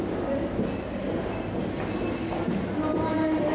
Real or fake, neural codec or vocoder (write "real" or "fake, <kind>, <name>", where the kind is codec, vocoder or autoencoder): real